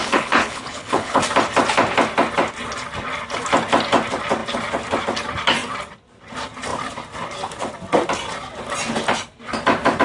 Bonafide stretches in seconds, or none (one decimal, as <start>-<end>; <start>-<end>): 1.2-10.0

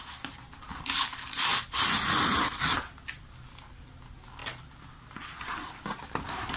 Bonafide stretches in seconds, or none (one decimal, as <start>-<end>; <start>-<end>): 0.0-6.6